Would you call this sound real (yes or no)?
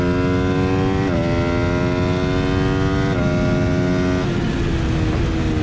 yes